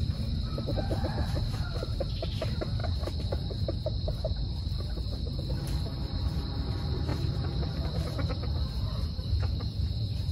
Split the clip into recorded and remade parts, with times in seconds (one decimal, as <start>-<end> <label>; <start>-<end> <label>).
0.0-10.3 remade